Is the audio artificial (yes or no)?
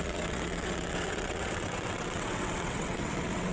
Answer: yes